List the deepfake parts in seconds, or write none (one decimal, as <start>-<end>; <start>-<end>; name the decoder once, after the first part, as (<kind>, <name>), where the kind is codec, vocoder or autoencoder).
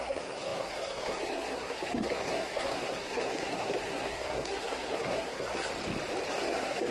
0.0-5.7 (codec, SNAC); 6.3-6.9